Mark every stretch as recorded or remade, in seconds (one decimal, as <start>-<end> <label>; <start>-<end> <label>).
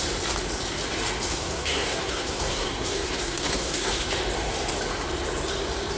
0.0-1.3 recorded; 1.3-4.0 remade; 4.0-6.0 recorded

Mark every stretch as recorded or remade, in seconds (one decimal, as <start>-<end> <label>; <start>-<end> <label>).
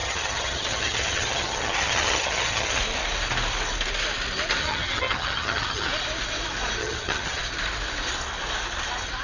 0.0-2.8 remade; 2.8-4.6 recorded; 4.6-5.9 remade; 5.9-6.8 recorded; 6.8-7.4 remade; 7.4-9.2 recorded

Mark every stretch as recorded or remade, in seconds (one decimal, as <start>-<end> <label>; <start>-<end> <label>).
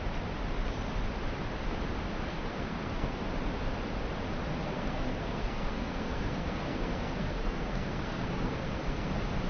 0.0-2.3 recorded; 2.3-3.2 remade; 3.2-4.6 recorded; 4.6-9.1 remade; 9.1-9.5 recorded